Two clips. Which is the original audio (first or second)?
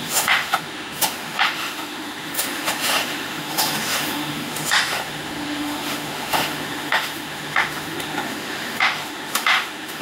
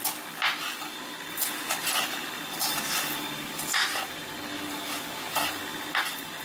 second